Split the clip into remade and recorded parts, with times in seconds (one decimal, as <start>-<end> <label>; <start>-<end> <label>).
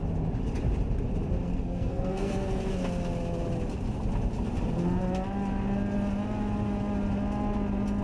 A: 0.0-1.4 recorded; 1.4-2.7 remade; 2.7-8.0 recorded